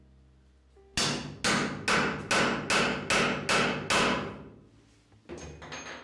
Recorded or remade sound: recorded